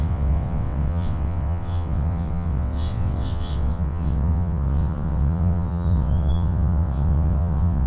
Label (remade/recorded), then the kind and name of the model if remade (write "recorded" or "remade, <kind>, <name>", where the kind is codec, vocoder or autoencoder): remade, vocoder, WaveNeXt